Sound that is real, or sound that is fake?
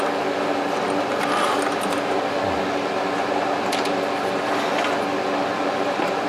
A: real